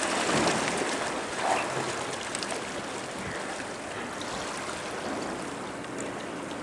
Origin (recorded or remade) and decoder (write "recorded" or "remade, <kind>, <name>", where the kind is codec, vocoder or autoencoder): recorded